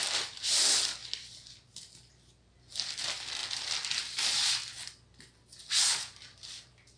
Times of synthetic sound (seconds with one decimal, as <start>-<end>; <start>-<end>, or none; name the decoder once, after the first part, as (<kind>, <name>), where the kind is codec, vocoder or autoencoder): none

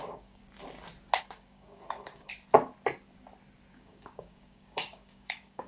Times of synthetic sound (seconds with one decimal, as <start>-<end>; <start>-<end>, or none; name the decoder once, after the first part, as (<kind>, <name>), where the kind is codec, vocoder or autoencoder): 0.0-0.4 (codec, DAC); 1.2-2.3; 3.7-5.7